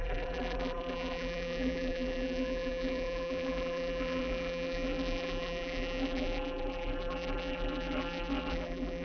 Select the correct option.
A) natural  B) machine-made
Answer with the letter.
B